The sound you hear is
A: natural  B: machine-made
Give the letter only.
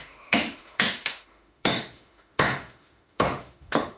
B